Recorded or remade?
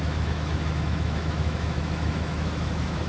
remade